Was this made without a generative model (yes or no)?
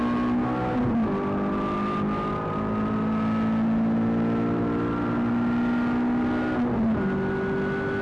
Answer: yes